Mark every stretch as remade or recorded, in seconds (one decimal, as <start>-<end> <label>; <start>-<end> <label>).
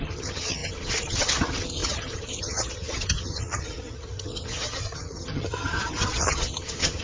0.0-7.0 remade